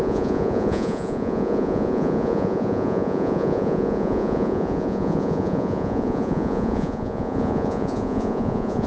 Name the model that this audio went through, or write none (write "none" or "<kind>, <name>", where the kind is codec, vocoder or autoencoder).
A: vocoder, Vocos